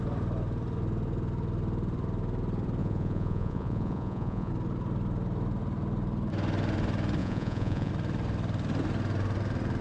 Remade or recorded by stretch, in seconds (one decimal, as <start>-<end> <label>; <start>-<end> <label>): 0.0-2.8 recorded; 2.8-4.5 remade; 4.5-7.2 recorded; 7.2-7.9 remade; 7.9-9.8 recorded